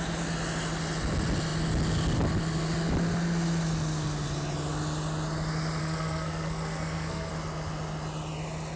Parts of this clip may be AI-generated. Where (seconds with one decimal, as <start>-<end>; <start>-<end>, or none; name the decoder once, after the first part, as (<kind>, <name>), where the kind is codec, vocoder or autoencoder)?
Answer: 5.8-7.3 (codec, SNAC)